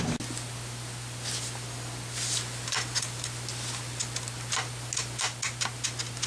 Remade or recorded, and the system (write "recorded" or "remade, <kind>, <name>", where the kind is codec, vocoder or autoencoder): recorded